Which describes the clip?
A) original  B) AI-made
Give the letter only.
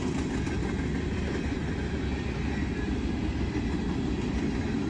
A